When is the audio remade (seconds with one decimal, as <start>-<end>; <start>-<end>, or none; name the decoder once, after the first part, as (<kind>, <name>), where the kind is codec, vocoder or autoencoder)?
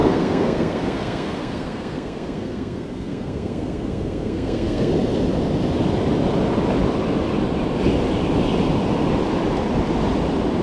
0.0-4.9 (codec, SNAC)